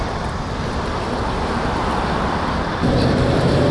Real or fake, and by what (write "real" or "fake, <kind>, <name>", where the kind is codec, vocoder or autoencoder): fake, vocoder, BigVGAN v2